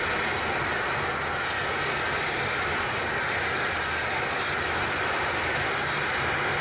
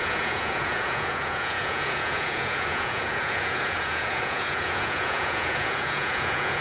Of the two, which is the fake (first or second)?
second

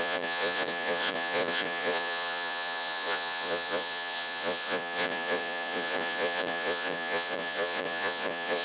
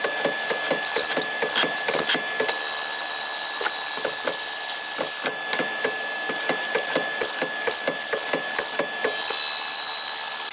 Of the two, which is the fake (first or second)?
first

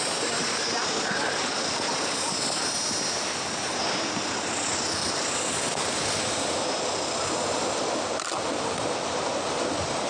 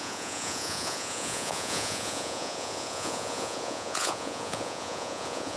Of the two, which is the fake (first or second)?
second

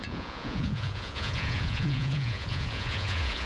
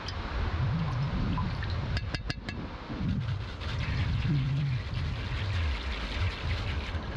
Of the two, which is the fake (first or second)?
first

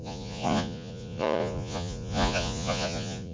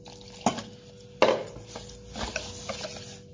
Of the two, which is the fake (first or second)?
first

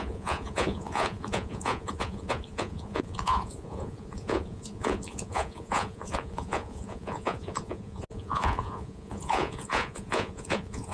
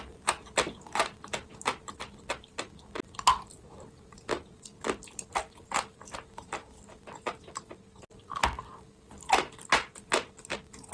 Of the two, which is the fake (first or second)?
first